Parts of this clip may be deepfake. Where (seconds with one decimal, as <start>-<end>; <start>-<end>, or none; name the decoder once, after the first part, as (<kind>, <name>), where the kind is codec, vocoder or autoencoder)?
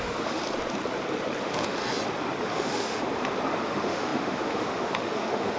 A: 0.0-0.4 (autoencoder, DAC-VAE); 1.4-1.8; 2.5-3.0; 3.5-5.6